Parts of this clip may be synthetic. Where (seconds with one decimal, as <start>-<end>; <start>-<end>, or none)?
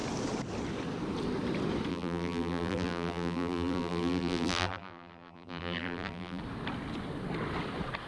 1.9-6.4